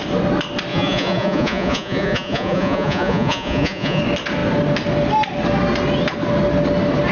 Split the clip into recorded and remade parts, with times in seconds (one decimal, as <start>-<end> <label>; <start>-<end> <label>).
0.0-0.7 recorded; 0.7-4.0 remade; 4.0-7.1 recorded